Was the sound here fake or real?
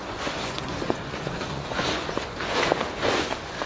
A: fake